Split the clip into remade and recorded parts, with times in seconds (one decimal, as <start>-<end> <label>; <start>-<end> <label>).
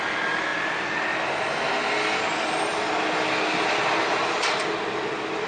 0.0-5.5 recorded